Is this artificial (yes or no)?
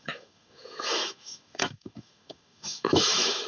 yes